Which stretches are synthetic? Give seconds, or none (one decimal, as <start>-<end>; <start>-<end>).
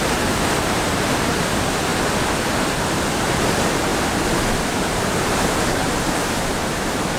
0.0-1.9; 3.2-3.9; 4.5-7.2